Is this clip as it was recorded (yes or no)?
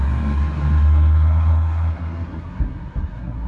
no